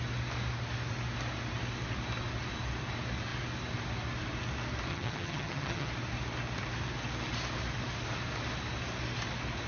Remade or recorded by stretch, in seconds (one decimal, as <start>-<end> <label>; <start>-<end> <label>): 0.0-4.9 recorded; 4.9-5.9 remade; 5.9-9.7 recorded